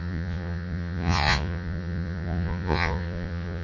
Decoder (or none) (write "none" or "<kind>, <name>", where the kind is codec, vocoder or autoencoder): vocoder, Vocos